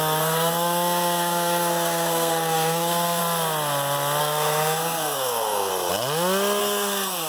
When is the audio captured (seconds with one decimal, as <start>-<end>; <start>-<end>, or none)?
3.2-4.2; 5.7-6.6